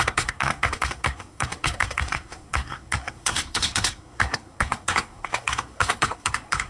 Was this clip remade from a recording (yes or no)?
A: yes